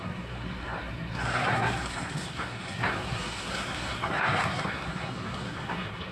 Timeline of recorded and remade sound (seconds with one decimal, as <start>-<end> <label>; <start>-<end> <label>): 0.0-6.1 remade

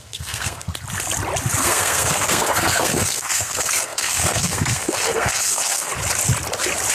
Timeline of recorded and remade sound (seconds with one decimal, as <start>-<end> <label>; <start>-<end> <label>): 0.0-0.7 remade; 0.7-1.6 recorded; 1.6-5.9 remade; 5.9-6.9 recorded

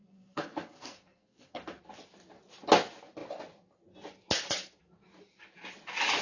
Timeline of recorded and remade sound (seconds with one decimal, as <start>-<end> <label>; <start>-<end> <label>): 0.0-1.8 remade; 1.8-6.2 recorded